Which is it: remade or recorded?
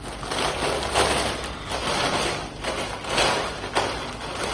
recorded